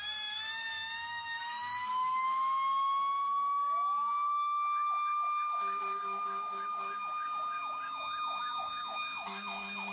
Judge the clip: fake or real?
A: fake